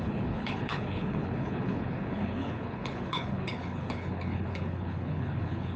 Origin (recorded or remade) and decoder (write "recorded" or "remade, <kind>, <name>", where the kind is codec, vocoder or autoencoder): remade, codec, HILCodec